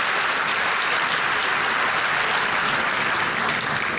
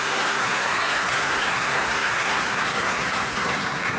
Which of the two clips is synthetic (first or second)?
second